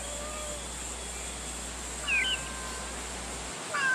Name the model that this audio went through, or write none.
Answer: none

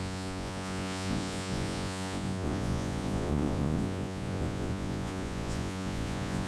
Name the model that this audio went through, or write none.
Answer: vocoder, Vocos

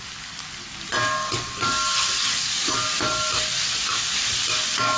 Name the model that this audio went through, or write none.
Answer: none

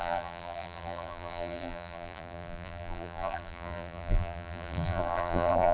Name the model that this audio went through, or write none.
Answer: vocoder, BigVGAN v2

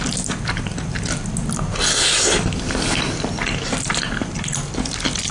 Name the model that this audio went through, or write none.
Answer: none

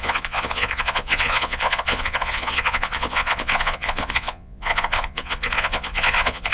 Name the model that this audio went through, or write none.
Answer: vocoder, Vocos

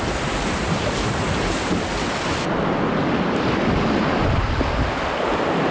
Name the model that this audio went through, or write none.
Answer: none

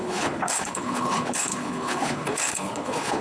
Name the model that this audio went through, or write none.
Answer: codec, HILCodec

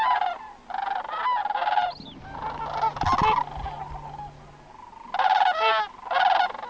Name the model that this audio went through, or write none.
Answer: none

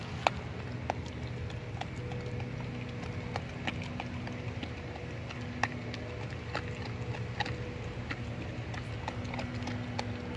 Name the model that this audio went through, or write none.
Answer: none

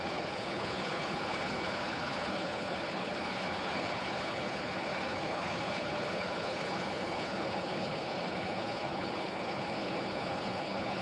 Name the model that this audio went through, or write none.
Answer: codec, HILCodec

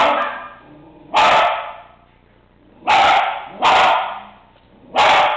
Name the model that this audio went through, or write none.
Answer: none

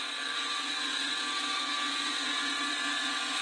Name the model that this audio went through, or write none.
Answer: vocoder, WaveNeXt